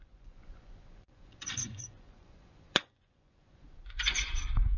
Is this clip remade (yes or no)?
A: yes